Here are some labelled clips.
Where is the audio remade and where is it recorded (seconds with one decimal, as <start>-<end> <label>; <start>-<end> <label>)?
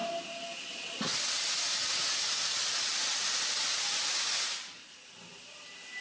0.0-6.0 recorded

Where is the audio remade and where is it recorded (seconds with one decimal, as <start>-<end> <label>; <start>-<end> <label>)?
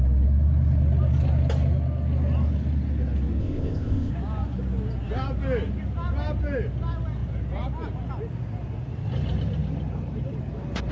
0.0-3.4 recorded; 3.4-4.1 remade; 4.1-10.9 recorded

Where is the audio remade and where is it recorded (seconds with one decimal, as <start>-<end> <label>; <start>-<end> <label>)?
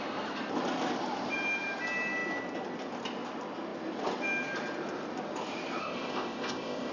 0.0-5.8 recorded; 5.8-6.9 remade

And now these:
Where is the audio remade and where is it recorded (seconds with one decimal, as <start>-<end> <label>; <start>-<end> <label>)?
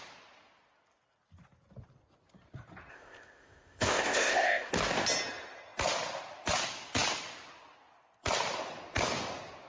0.0-2.9 recorded; 2.9-4.7 remade; 4.7-9.7 recorded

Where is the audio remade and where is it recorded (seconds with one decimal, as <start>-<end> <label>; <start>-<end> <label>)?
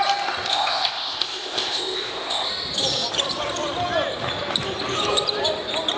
0.0-0.5 recorded; 0.5-2.5 remade; 2.5-6.0 recorded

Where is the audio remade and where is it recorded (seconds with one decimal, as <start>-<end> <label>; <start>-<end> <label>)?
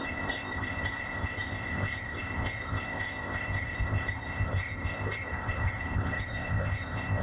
0.0-7.2 remade